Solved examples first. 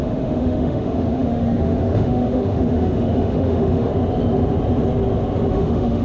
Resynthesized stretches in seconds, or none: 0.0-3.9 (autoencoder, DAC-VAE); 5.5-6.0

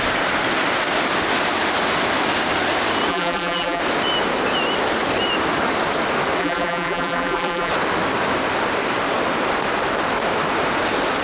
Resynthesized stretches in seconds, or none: 3.1-3.8 (vocoder, BigVGAN v2); 6.4-7.7

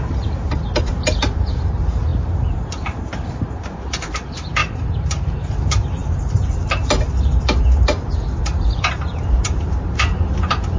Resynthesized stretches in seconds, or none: 0.0-10.8 (vocoder, BigVGAN v2)

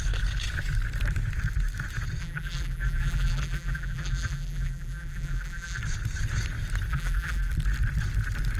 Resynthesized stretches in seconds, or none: 2.2-5.8 (vocoder, BigVGAN v2); 6.9-7.5

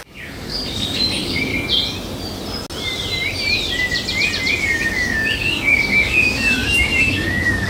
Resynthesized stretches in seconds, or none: 0.0-1.5 (codec, DAC); 4.6-7.7

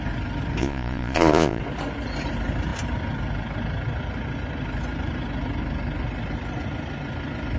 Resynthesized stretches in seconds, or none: 0.6-1.6 (vocoder, Vocos)